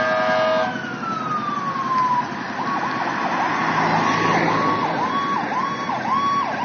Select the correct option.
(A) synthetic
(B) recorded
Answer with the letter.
B